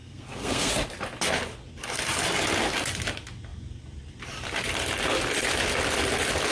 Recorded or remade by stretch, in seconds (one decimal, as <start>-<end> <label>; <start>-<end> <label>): 0.0-0.7 remade; 0.7-6.5 recorded